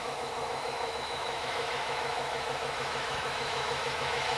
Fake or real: fake